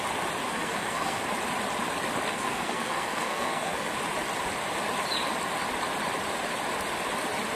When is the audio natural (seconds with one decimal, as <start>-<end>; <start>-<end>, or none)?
0.0-0.5; 1.2-2.3; 3.9-7.6

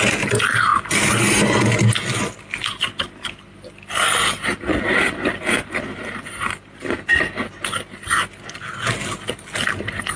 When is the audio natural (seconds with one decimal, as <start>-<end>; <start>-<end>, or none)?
0.0-10.2

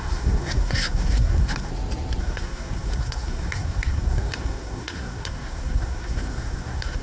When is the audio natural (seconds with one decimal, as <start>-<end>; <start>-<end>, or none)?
1.7-2.2

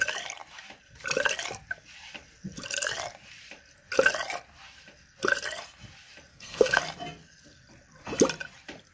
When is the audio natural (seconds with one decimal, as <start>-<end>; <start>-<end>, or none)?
0.0-6.3; 6.8-8.9

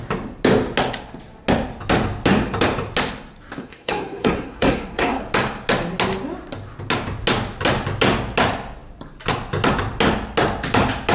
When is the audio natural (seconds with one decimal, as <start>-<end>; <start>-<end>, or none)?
0.0-3.6; 5.2-11.1

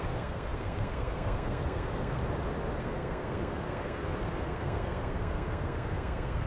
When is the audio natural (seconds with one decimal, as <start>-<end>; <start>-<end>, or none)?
2.2-2.8

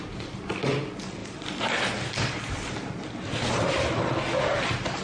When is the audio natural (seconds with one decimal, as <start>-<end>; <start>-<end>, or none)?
0.0-5.0

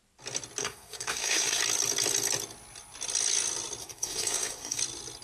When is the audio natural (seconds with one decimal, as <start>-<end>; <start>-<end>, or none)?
0.0-0.6; 1.6-3.8; 4.8-5.2